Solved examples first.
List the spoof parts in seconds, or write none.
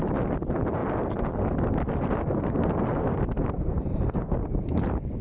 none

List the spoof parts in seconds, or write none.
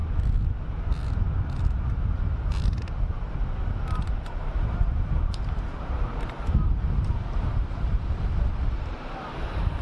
4.0-9.8 (vocoder, BigVGAN v2)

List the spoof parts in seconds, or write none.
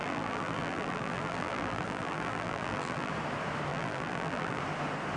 0.0-3.1 (vocoder, BigVGAN v2); 3.7-4.6